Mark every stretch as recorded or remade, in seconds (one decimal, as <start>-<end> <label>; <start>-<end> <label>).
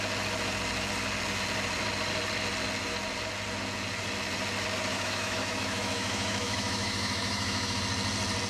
0.0-4.9 recorded; 4.9-7.8 remade; 7.8-8.5 recorded